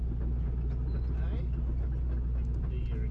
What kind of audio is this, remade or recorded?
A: recorded